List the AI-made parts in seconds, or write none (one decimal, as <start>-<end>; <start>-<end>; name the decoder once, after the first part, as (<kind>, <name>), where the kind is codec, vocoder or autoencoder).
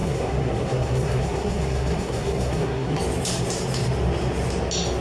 0.0-3.0 (codec, SNAC)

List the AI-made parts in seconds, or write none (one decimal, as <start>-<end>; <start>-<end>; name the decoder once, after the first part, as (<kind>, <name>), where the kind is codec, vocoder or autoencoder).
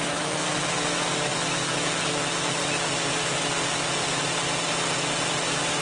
none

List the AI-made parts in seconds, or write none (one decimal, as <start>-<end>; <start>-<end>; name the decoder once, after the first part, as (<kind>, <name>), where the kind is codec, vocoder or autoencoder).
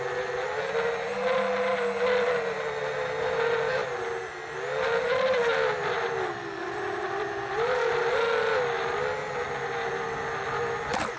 none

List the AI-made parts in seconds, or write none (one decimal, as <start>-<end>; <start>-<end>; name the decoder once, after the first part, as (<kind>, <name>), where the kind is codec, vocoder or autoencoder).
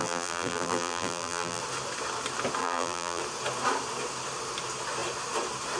0.0-1.6 (vocoder, BigVGAN v2); 2.6-3.2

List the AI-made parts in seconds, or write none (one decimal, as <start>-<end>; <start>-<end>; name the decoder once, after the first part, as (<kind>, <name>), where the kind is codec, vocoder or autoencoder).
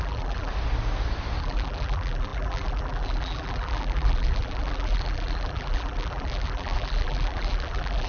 0.0-0.5 (vocoder, BigVGAN v2); 1.4-8.1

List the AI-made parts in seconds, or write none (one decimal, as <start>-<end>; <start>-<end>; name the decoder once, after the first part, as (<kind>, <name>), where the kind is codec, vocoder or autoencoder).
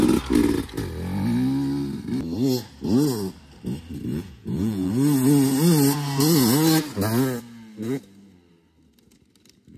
4.1-4.9 (vocoder, Vocos)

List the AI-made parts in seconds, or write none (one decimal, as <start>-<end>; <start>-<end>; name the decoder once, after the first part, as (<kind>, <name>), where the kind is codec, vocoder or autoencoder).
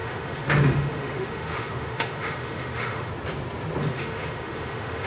0.0-3.1 (autoencoder, DAC-VAE); 3.8-5.1